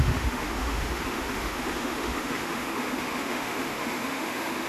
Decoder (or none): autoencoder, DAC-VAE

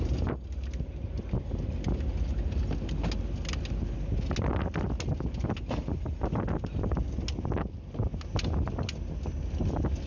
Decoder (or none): none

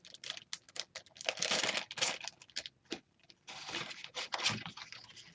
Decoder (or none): none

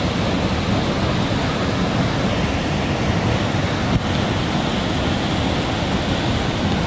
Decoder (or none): none